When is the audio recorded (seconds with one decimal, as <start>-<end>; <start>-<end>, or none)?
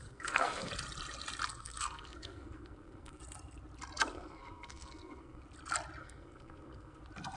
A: 0.7-1.5; 3.2-4.1; 5.4-6.0; 7.0-7.4